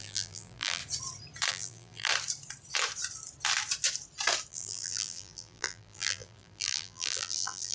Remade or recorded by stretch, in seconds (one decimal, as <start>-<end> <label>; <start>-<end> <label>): 0.0-0.8 remade; 0.8-1.5 recorded; 1.5-2.1 remade; 2.1-4.5 recorded; 4.5-7.7 remade